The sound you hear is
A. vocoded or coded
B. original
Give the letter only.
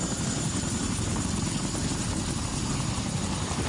B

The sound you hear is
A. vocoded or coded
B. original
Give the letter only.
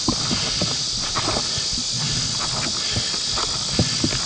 B